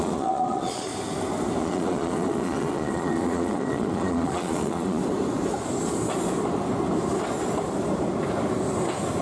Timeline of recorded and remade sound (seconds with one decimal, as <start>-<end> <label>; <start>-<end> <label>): 0.0-0.9 remade; 0.9-1.6 recorded; 1.6-5.0 remade; 5.0-9.2 recorded